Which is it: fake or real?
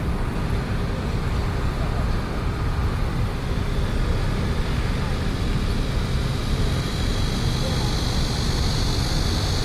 real